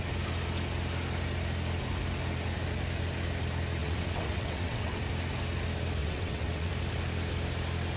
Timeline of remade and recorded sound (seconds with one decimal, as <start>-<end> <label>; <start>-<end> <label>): 0.0-3.8 recorded; 3.8-5.0 remade; 5.0-6.0 recorded; 6.0-6.7 remade; 6.7-8.0 recorded